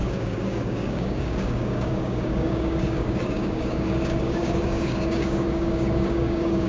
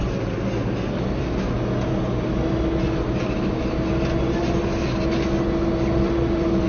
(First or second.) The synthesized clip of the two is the first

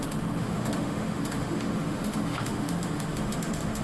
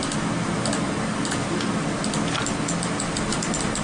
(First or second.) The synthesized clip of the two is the first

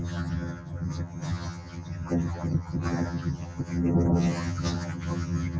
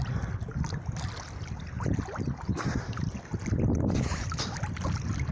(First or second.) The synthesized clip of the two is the first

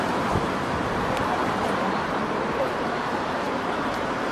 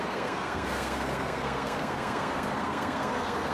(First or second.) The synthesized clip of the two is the second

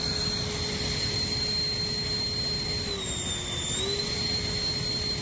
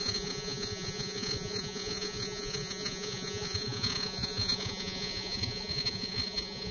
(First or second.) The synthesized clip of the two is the second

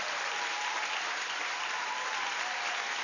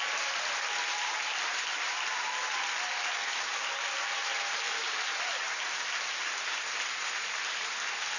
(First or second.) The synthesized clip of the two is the first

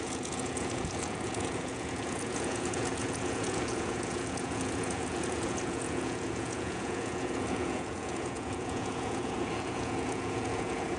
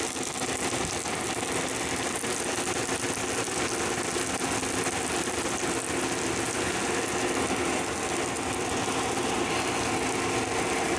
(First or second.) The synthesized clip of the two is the first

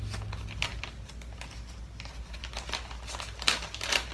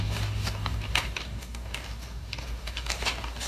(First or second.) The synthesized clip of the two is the second